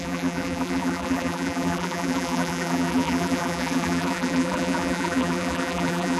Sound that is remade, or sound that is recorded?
remade